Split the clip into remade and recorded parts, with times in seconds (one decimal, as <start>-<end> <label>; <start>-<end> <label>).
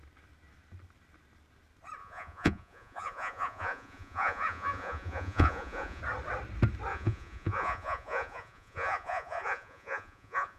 0.0-2.0 recorded; 2.0-6.0 remade; 6.0-6.9 recorded; 6.9-10.6 remade